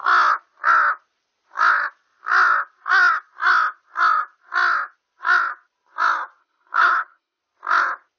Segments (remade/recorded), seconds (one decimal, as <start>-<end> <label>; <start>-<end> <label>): 0.0-6.4 recorded; 6.4-7.4 remade; 7.4-8.2 recorded